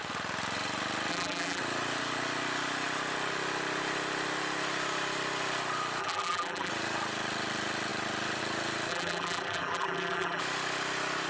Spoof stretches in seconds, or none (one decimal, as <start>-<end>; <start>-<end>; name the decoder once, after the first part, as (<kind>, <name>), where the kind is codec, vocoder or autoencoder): 1.1-1.6 (vocoder, BigVGAN v2); 6.0-6.7; 8.9-10.4